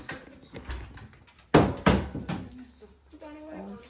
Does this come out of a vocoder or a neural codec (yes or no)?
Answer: no